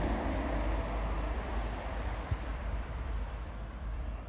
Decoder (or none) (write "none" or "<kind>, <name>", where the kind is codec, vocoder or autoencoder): vocoder, BigVGAN v2